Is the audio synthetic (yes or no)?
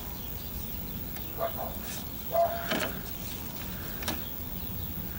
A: no